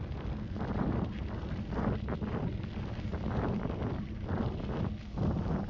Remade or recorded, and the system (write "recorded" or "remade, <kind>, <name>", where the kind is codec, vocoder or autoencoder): recorded